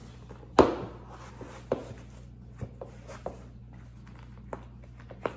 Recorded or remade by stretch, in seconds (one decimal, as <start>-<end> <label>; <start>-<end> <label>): 0.0-5.4 recorded